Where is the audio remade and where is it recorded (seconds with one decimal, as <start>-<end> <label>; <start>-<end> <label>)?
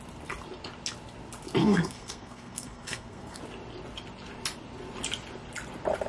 0.0-1.6 recorded; 1.6-3.4 remade; 3.4-6.1 recorded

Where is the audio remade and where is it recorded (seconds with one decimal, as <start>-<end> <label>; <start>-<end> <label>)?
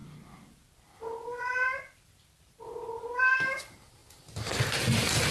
0.0-5.3 recorded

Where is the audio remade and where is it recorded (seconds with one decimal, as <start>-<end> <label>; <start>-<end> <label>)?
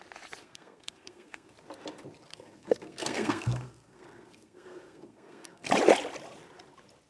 0.0-0.4 recorded; 0.4-1.5 remade; 1.5-2.3 recorded; 2.3-5.7 remade; 5.7-7.1 recorded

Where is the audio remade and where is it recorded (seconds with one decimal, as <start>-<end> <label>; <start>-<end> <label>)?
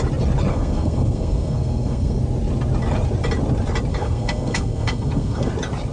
0.0-0.5 recorded; 0.5-2.2 remade; 2.2-3.9 recorded; 3.9-5.5 remade; 5.5-5.9 recorded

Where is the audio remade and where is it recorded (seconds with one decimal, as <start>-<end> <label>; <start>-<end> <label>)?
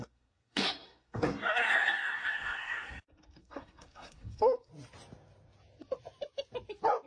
0.0-4.7 remade; 4.7-7.1 recorded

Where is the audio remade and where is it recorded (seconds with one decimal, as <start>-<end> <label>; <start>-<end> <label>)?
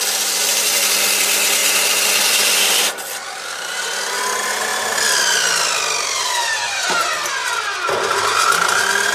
0.0-9.1 recorded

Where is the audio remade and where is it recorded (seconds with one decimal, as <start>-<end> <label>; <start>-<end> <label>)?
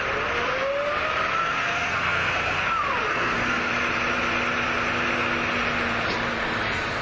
0.0-1.4 recorded; 1.4-2.6 remade; 2.6-3.1 recorded; 3.1-3.7 remade; 3.7-7.0 recorded